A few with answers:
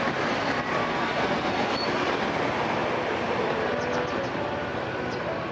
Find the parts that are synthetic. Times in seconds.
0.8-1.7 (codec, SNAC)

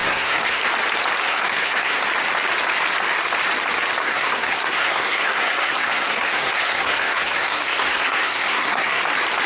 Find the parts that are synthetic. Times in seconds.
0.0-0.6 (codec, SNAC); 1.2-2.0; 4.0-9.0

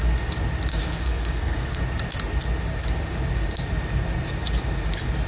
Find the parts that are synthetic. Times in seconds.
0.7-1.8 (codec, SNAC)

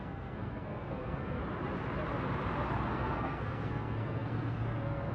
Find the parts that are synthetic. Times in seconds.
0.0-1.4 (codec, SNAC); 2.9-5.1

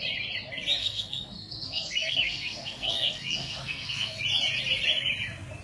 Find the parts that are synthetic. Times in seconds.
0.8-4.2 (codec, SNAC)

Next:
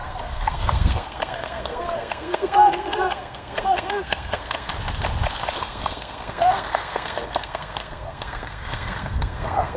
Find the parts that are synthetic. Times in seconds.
0.0-4.7 (codec, SNAC); 5.6-9.8

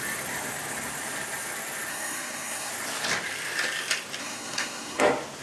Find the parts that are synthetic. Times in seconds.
1.9-2.7 (codec, SNAC); 4.2-5.0

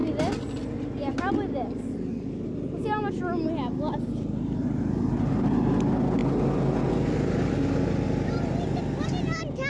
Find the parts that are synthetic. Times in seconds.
none